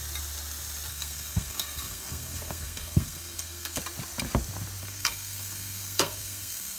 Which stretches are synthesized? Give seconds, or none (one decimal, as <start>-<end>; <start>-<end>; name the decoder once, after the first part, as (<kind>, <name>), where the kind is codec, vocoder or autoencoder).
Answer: 0.9-3.8 (codec, SNAC); 4.8-6.8